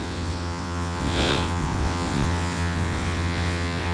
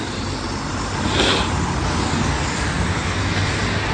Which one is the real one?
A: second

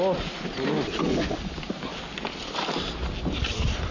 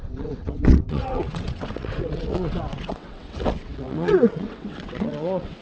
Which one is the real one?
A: first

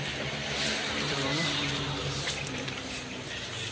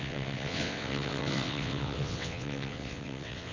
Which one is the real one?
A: first